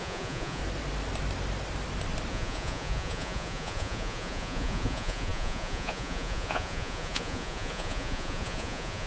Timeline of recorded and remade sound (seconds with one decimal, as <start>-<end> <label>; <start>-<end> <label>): 0.0-0.6 remade; 0.6-2.3 recorded; 2.3-9.1 remade